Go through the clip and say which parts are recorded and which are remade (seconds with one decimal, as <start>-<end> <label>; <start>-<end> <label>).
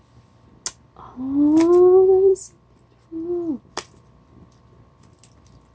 0.0-5.7 recorded